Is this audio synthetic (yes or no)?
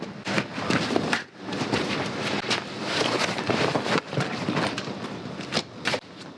yes